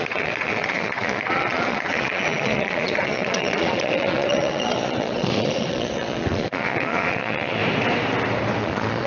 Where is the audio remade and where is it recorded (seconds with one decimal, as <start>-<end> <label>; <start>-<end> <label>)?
0.0-7.6 remade; 7.6-8.6 recorded; 8.6-9.1 remade

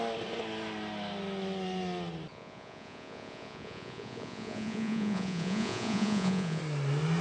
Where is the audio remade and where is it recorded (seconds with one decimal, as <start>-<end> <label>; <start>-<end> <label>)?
0.0-2.3 recorded; 2.3-6.6 remade; 6.6-7.2 recorded

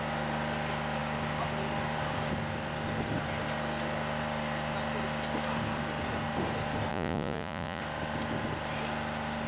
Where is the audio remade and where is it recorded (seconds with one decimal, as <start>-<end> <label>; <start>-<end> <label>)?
0.0-6.9 recorded; 6.9-7.8 remade; 7.8-9.5 recorded

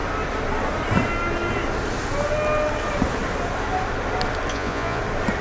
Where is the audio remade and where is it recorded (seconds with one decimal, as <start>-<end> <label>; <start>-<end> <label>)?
0.0-4.5 recorded; 4.5-5.0 remade; 5.0-5.4 recorded